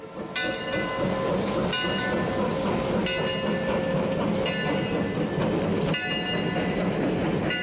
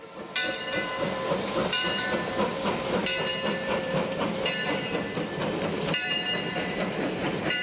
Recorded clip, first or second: first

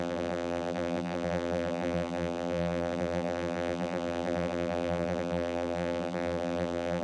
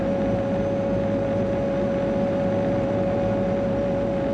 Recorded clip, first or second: second